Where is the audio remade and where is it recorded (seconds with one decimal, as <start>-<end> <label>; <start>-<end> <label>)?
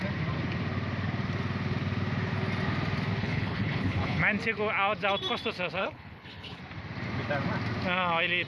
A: 0.0-3.2 recorded; 3.2-4.2 remade; 4.2-5.8 recorded; 5.8-6.6 remade; 6.6-8.5 recorded